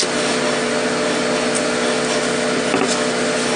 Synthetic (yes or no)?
no